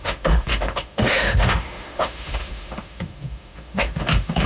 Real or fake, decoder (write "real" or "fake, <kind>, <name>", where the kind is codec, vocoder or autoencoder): fake, autoencoder, DAC-VAE